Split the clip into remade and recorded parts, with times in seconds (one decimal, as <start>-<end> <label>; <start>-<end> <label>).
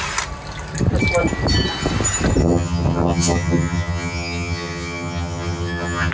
0.0-2.4 recorded; 2.4-6.1 remade